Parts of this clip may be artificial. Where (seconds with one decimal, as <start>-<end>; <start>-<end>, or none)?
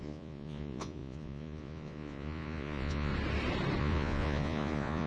0.0-3.1; 3.8-5.1